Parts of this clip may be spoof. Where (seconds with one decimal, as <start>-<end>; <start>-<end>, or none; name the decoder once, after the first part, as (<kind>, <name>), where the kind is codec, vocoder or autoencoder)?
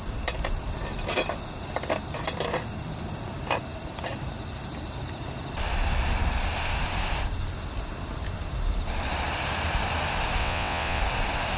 10.4-11.0 (vocoder, WaveNeXt)